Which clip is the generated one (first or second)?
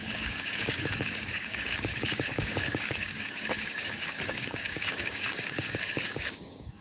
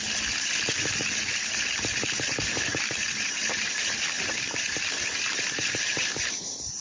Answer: first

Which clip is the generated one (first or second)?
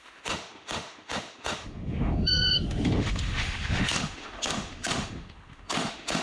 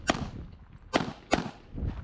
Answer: first